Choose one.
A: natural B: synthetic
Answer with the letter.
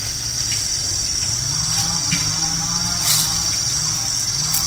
A